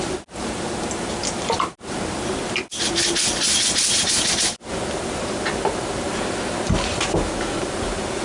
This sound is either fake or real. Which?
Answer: real